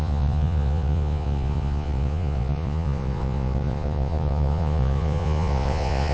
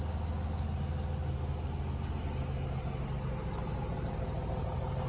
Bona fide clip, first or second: second